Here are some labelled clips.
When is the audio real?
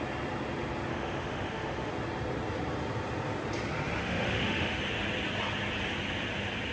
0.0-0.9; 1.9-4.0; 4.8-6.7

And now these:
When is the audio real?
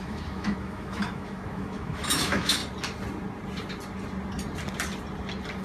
2.6-5.6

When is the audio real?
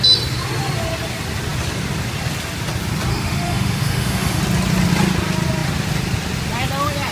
0.0-3.1; 4.4-7.1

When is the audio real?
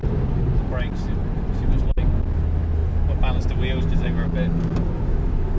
0.0-5.6